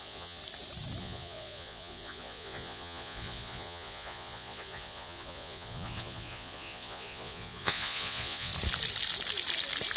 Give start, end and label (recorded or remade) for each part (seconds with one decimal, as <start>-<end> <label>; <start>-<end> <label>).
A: 0.0-0.4 remade; 0.4-1.0 recorded; 1.0-8.5 remade; 8.5-10.0 recorded